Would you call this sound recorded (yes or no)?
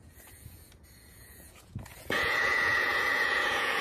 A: no